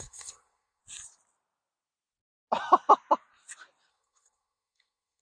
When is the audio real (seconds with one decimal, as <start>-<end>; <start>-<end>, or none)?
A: 0.8-3.9